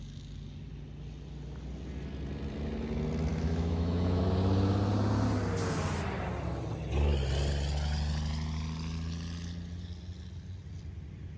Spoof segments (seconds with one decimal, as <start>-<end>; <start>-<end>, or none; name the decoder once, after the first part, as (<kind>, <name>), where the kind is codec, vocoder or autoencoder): 3.3-4.2 (autoencoder, DAC-VAE)